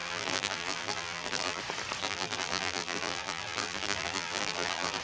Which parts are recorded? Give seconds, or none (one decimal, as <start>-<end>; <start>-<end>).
1.6-2.0